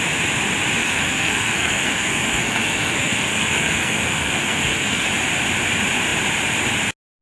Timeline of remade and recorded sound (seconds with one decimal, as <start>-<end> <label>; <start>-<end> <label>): 0.0-0.8 recorded; 0.8-5.1 remade; 5.1-7.2 recorded